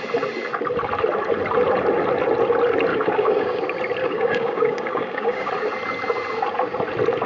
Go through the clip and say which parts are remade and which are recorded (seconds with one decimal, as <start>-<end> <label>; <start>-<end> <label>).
0.0-2.9 recorded; 2.9-3.6 remade; 3.6-4.0 recorded; 4.0-5.5 remade; 5.5-7.3 recorded